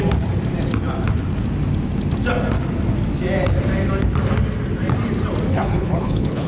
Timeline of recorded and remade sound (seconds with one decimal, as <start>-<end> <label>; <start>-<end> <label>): 0.0-5.5 recorded; 5.5-6.5 remade

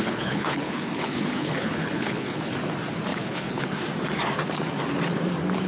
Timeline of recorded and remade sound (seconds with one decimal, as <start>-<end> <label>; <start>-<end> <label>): 0.0-2.5 remade; 2.5-3.1 recorded; 3.1-3.8 remade; 3.8-5.7 recorded